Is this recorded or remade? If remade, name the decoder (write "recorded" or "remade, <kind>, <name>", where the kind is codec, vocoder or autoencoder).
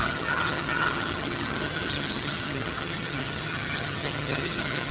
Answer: remade, vocoder, HiFi-GAN